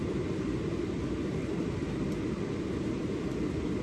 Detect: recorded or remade recorded